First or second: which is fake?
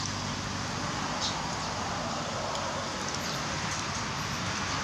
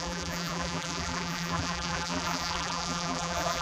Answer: second